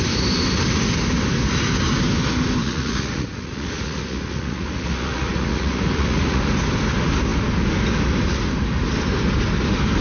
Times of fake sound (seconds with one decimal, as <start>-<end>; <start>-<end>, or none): 2.6-6.4